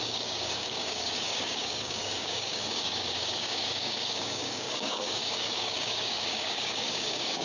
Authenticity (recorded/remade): remade